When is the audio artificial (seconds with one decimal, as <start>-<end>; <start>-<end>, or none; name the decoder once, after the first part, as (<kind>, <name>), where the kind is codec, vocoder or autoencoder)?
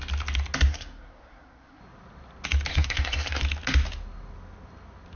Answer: 0.7-1.8 (codec, SNAC); 2.7-3.4